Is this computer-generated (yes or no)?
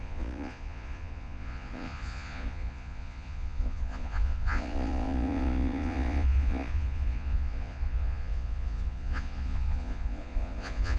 yes